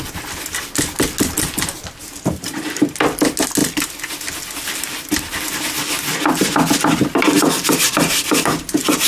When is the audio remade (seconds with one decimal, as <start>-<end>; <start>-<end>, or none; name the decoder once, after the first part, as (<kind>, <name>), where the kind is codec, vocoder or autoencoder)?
2.0-2.8 (vocoder, BigVGAN v2)